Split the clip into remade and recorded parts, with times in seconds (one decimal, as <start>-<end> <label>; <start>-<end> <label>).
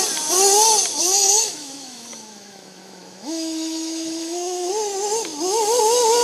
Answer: 0.0-1.0 recorded; 1.0-4.7 remade; 4.7-6.2 recorded